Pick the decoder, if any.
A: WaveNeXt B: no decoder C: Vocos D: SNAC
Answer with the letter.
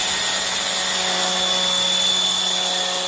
B